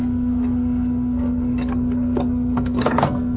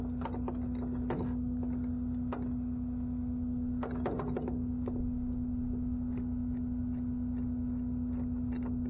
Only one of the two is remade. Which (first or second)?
first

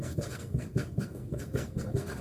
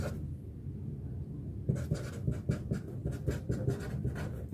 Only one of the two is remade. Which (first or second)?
first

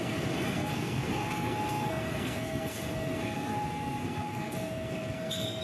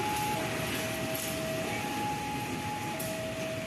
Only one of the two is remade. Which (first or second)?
first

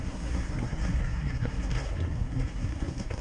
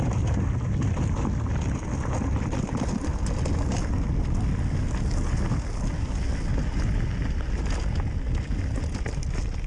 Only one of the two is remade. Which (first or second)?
first